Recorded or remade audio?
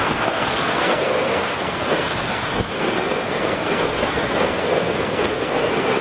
remade